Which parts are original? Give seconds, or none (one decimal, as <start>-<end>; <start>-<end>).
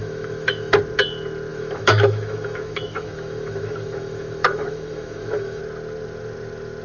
0.8-1.5; 5.6-6.8